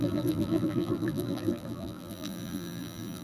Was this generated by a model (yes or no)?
yes